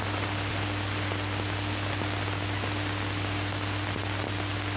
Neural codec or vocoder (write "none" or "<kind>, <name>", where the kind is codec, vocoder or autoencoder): none